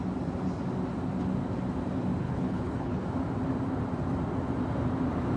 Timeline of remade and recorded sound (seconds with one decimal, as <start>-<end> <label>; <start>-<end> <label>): 0.0-2.2 recorded; 2.2-3.0 remade; 3.0-5.4 recorded